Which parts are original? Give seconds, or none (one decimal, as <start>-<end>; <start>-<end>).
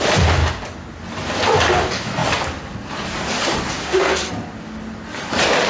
0.0-3.8; 4.3-5.7